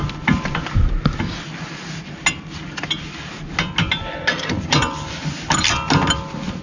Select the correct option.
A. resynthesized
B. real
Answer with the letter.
B